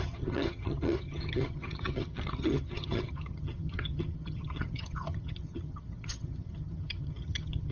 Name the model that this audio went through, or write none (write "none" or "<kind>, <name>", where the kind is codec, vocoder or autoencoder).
vocoder, HiFi-GAN